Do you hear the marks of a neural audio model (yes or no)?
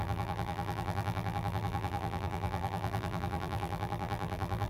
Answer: yes